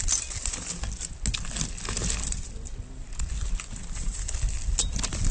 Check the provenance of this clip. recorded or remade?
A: recorded